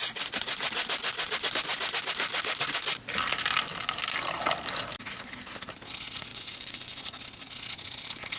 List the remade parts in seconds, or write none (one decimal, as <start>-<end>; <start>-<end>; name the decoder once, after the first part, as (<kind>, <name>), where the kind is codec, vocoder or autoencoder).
6.3-7.0 (vocoder, Vocos)